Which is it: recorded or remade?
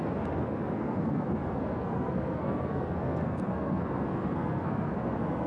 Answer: remade